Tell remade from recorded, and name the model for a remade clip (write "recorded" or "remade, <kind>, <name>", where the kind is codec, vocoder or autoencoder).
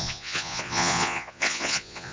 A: remade, vocoder, Vocos